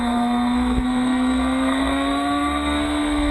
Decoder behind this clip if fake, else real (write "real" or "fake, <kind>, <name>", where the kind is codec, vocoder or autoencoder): fake, codec, SNAC